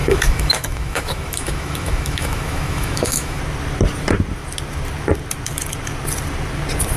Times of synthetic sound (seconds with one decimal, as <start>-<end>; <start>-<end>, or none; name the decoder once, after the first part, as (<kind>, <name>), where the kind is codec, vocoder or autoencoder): 0.0-3.4 (autoencoder, DAC-VAE)